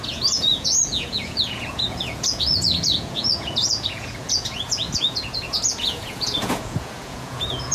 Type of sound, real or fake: fake